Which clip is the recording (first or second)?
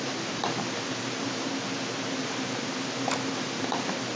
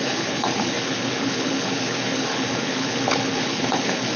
first